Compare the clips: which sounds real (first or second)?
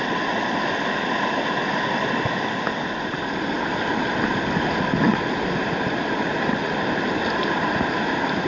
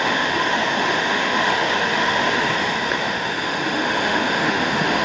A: first